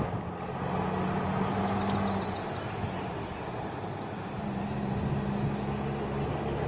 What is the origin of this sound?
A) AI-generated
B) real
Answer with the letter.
B